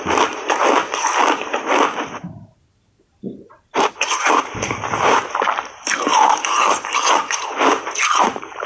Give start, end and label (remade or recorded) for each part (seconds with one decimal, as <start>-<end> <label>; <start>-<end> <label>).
0.0-0.6 remade; 0.6-3.1 recorded; 3.1-8.7 remade